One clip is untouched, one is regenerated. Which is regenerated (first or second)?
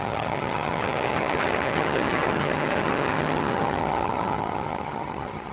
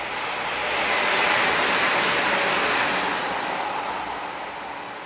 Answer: first